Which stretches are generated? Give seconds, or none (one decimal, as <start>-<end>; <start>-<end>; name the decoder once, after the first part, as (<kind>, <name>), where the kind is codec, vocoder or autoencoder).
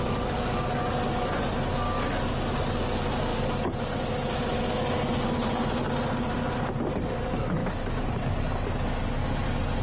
7.6-8.2 (vocoder, BigVGAN v2)